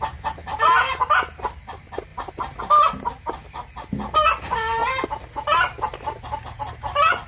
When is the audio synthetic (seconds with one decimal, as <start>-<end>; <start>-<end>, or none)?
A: 0.4-0.9